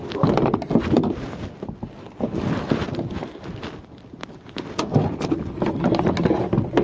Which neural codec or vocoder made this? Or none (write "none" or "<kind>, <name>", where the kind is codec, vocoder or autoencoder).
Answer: none